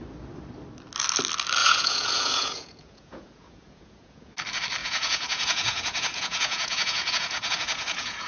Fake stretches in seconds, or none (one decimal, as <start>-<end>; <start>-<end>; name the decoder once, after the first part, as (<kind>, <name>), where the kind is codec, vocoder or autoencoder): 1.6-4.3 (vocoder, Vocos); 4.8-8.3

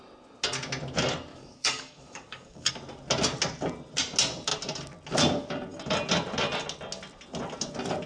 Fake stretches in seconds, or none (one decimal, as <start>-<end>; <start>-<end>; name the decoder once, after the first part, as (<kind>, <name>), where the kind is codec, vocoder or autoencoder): 1.3-2.7 (codec, DAC)

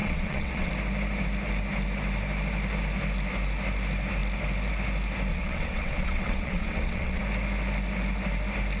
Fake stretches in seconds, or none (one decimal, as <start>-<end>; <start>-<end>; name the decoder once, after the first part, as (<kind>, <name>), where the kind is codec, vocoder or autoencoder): 0.0-0.7 (vocoder, WaveNeXt); 5.3-7.2

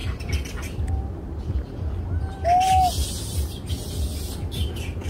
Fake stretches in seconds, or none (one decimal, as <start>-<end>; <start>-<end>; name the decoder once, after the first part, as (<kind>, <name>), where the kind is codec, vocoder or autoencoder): none

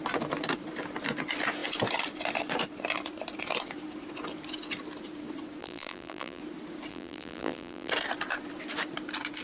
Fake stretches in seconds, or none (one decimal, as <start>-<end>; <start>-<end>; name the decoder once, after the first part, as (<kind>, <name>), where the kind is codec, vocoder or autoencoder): 5.6-6.4 (vocoder, BigVGAN v2); 6.9-7.9

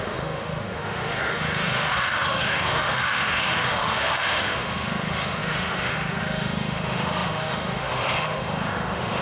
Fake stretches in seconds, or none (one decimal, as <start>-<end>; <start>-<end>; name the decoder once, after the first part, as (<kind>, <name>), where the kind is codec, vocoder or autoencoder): 0.0-9.2 (autoencoder, DAC-VAE)

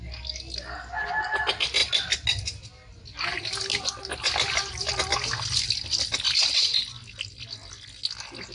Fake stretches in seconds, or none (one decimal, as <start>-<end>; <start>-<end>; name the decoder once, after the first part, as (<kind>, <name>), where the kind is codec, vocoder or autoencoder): none

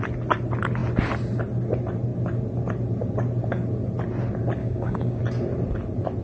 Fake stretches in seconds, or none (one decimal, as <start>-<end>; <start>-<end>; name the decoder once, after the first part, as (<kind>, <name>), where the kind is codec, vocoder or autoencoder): 4.6-5.2 (codec, DAC)